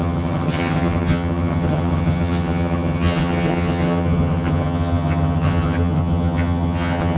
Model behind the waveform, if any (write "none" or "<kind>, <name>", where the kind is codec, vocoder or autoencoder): vocoder, HiFi-GAN